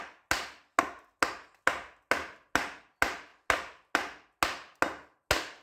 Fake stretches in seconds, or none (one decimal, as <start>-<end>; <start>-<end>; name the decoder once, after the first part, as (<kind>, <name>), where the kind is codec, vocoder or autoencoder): none